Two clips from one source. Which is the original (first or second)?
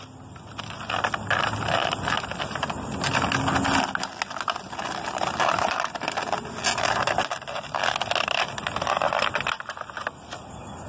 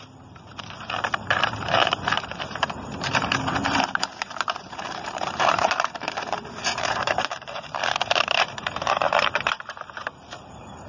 first